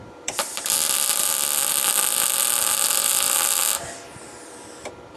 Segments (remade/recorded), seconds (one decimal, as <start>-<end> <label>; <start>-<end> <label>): 0.0-3.1 remade; 3.1-5.2 recorded